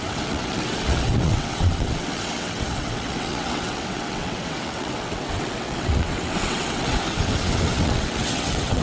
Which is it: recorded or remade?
remade